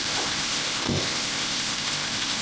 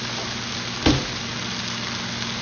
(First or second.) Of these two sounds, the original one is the second